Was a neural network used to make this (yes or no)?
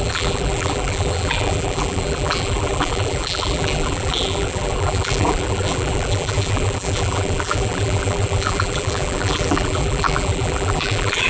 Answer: yes